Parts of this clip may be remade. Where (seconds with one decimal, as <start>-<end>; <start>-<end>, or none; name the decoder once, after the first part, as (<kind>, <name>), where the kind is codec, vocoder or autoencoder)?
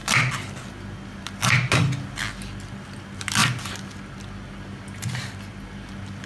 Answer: none